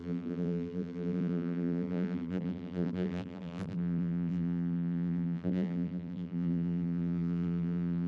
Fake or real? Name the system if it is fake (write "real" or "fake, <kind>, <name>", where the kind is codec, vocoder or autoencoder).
fake, vocoder, BigVGAN v2